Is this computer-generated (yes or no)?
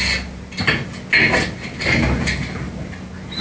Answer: no